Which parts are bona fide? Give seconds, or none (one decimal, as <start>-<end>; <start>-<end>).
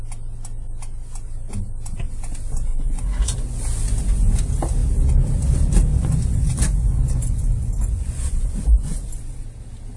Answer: 0.0-2.7; 3.6-5.9; 9.4-10.0